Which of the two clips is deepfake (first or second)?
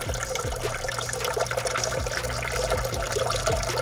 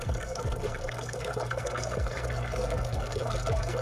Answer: second